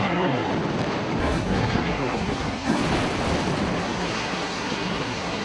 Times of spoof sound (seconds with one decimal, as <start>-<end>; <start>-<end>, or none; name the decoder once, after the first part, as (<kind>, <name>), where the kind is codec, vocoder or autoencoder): 0.0-0.5 (codec, SNAC); 1.2-2.8; 3.8-5.4